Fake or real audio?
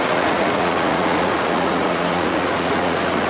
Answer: fake